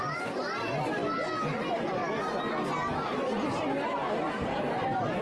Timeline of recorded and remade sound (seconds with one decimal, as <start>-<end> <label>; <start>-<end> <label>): 0.0-5.2 recorded